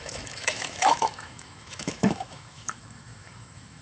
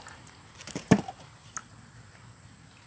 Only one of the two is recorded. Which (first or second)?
second